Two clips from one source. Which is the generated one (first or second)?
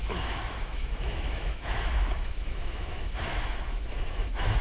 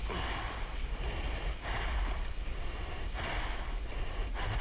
first